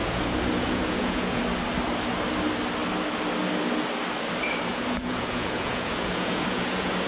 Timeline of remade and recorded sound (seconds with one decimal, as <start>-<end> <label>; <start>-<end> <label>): 0.0-1.4 remade; 1.4-4.7 recorded; 4.7-7.1 remade